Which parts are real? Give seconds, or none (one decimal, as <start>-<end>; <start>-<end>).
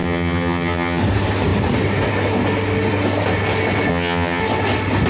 1.0-3.9; 4.4-5.1